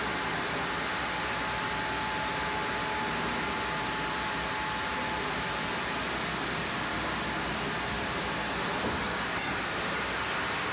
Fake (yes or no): no